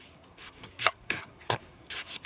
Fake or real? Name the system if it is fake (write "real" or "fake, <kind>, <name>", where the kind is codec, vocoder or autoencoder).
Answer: fake, codec, SNAC